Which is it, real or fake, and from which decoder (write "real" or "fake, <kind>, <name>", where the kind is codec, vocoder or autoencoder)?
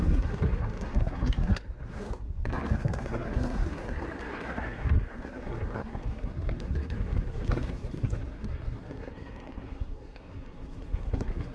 fake, codec, SNAC